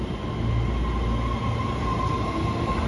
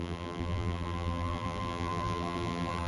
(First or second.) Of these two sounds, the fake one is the second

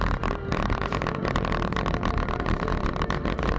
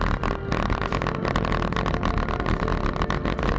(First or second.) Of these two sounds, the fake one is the first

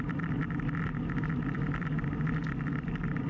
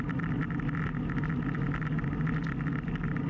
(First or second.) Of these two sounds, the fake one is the first